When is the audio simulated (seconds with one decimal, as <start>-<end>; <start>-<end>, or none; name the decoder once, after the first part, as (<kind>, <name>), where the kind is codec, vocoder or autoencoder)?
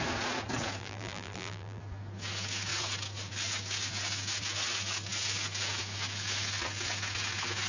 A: 0.8-1.8 (vocoder, BigVGAN v2)